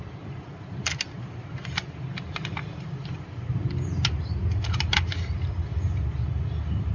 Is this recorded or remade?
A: recorded